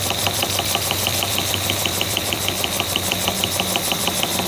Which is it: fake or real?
fake